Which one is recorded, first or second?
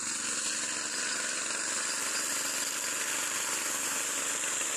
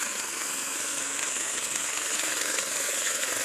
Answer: first